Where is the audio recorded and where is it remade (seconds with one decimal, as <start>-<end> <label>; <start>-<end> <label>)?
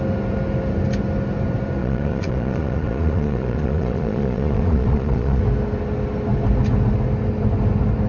0.0-1.8 recorded; 1.8-5.4 remade; 5.4-8.1 recorded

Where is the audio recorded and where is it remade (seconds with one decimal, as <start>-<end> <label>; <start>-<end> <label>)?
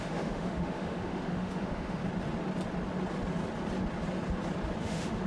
0.0-2.0 remade; 2.0-4.8 recorded; 4.8-5.3 remade